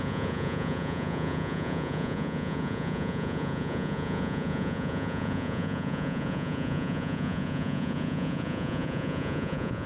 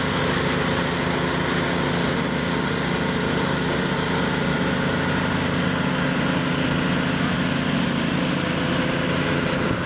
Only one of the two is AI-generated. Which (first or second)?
first